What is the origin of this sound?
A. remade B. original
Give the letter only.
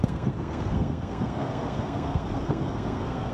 A